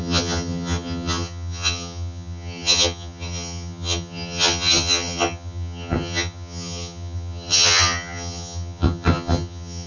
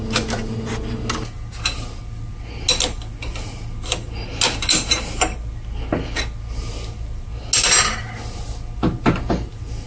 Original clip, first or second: second